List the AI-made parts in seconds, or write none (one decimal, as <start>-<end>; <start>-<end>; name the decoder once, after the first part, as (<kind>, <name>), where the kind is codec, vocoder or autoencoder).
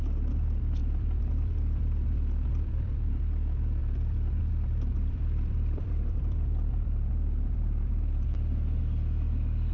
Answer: 0.8-3.1 (vocoder, BigVGAN v2); 4.9-8.8